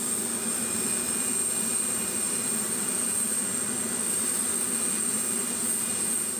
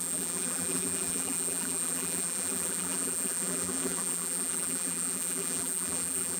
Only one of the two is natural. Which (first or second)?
first